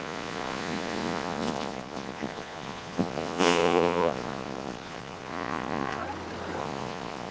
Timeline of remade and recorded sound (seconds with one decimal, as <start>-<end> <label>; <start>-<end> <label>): 0.0-6.0 remade; 6.0-6.6 recorded; 6.6-7.3 remade